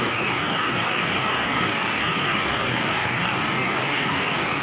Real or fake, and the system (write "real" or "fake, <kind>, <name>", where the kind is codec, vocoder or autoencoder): fake, codec, DAC